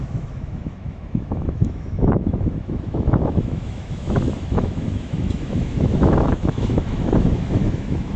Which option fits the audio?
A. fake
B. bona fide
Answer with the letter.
A